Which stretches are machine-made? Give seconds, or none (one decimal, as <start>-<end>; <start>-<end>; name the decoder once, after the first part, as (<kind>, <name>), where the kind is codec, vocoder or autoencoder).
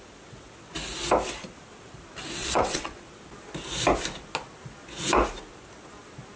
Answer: 2.4-3.0 (vocoder, WaveNeXt)